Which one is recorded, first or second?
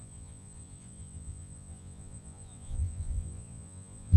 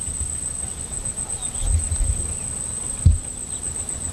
second